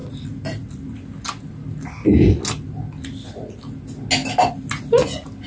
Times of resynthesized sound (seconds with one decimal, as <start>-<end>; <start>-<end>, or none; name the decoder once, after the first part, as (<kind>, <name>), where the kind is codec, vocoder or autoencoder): none